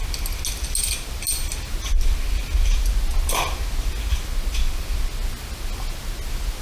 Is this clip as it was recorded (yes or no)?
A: yes